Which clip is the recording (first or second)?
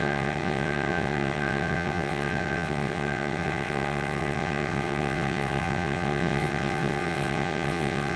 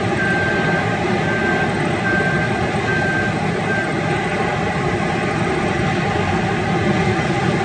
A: second